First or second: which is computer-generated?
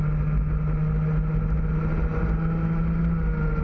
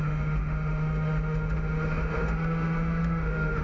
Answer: second